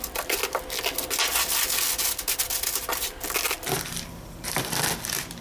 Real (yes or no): yes